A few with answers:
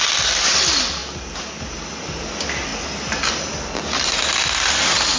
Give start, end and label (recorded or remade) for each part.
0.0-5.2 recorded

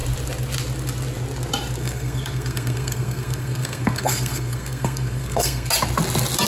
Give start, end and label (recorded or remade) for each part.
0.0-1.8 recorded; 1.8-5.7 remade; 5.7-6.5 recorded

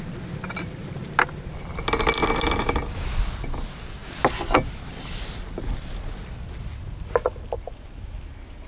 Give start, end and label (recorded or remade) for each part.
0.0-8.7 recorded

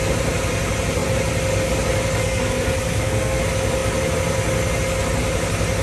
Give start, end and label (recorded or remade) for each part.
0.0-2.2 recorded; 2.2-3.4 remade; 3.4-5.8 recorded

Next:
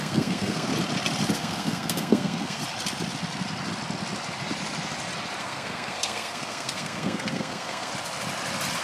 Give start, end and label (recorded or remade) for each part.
0.0-0.7 remade; 0.7-1.3 recorded; 1.3-2.6 remade; 2.6-5.4 recorded; 5.4-7.9 remade; 7.9-8.8 recorded